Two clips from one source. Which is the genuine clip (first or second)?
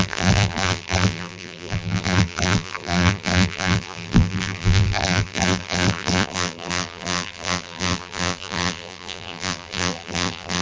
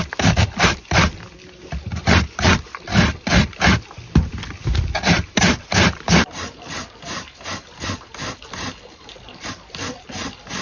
second